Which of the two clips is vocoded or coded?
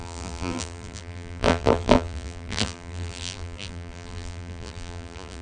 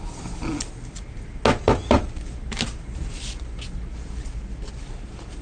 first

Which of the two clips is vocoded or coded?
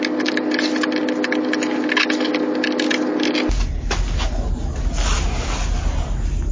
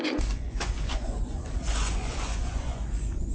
second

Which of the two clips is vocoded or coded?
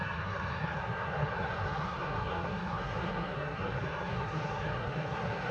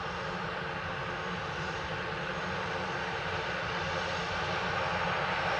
first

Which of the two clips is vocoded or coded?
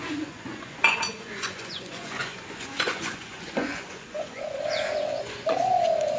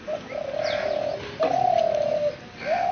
first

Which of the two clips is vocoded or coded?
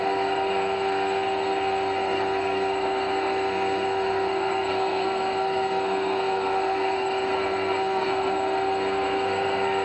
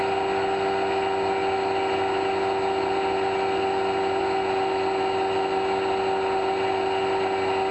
first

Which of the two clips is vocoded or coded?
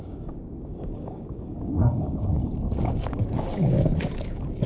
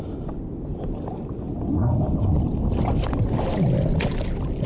first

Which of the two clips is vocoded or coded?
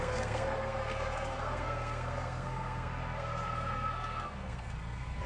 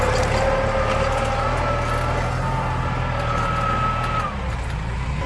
first